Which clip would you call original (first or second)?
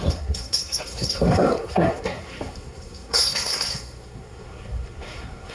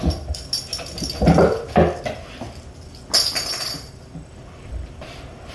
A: second